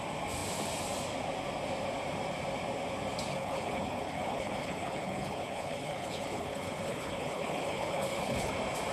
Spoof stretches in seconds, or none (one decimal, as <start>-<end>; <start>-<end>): 3.3-8.5